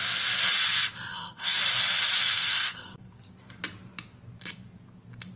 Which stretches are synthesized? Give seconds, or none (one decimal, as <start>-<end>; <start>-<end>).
1.1-1.6; 2.2-3.1